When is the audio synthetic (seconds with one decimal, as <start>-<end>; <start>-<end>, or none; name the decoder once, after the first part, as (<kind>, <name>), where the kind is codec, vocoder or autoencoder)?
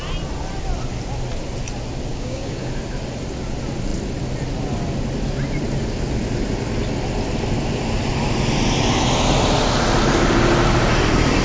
2.1-2.7 (codec, DAC)